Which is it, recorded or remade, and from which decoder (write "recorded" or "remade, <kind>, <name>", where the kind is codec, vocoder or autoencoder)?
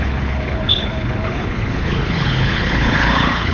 remade, codec, HILCodec